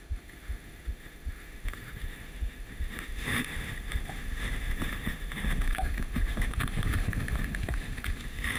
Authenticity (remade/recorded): remade